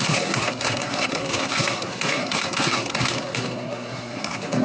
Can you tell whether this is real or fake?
fake